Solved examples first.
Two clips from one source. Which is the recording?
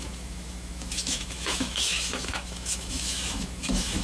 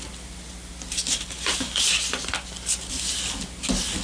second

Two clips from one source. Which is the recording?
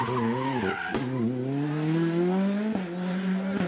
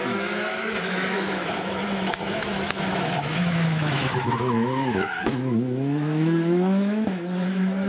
first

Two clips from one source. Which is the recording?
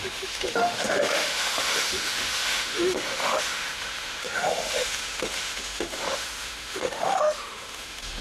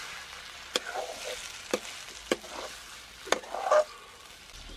second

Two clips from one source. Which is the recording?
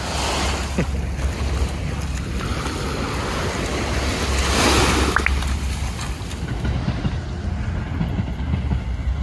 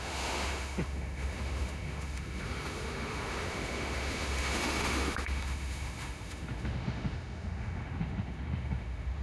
first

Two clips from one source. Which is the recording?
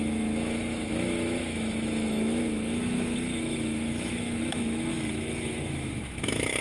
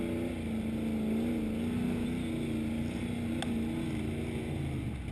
second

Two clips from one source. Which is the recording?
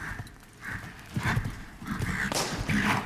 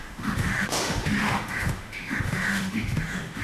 first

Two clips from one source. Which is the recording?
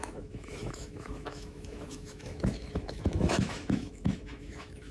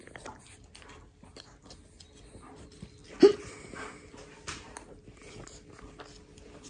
second